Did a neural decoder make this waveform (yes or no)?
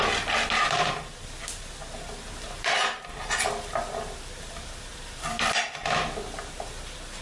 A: no